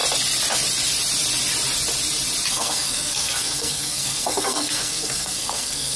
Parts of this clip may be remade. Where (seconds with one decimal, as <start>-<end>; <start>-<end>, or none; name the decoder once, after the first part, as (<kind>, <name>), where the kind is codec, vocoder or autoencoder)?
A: 2.5-6.0 (codec, SNAC)